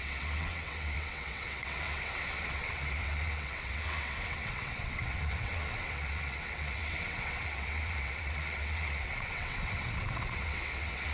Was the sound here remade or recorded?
remade